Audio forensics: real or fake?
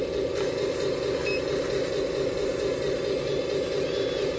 real